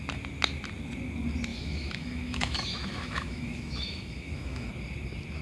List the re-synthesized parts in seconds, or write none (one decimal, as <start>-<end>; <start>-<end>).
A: 1.5-4.7